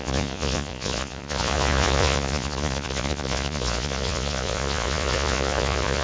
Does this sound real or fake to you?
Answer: fake